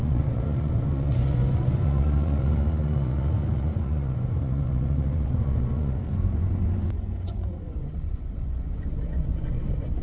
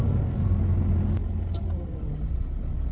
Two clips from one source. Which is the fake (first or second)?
first